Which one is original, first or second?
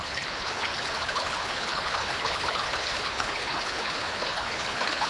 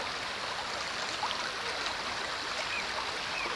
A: second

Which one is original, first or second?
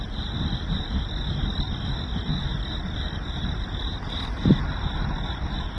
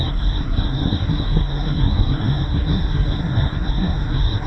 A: first